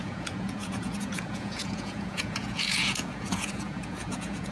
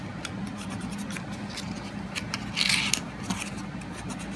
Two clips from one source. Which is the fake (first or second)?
first